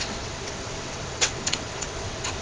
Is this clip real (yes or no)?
no